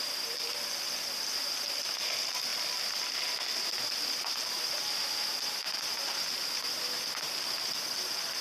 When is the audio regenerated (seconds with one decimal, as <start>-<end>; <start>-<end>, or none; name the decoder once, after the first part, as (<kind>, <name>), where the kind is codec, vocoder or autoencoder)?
none